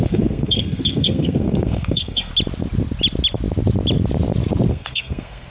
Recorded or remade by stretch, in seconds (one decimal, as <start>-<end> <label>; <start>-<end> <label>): 0.0-2.3 remade; 2.3-4.7 recorded; 4.7-5.5 remade